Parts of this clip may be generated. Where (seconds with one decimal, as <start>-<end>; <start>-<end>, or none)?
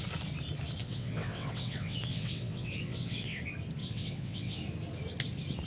0.8-3.4; 3.8-4.6